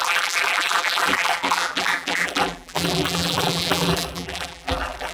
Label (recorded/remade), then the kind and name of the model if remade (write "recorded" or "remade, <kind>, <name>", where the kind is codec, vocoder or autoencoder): remade, vocoder, BigVGAN v2